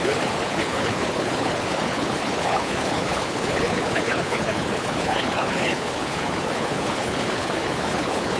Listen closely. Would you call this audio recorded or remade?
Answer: remade